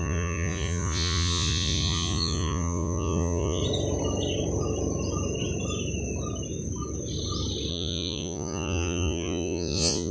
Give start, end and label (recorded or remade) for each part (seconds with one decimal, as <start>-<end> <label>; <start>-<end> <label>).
0.0-3.6 remade; 3.6-7.7 recorded; 7.7-10.1 remade